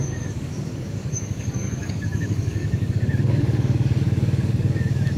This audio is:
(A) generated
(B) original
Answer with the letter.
A